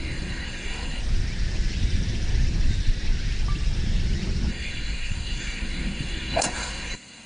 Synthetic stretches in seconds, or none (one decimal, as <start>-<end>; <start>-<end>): 0.0-1.0; 4.5-7.3